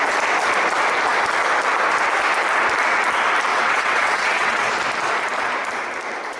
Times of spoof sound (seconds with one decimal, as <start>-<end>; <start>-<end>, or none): 3.5-4.7